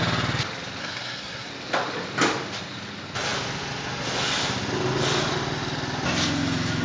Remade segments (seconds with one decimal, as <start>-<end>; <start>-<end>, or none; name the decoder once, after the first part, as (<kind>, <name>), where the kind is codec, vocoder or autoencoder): 0.8-1.5 (codec, SNAC)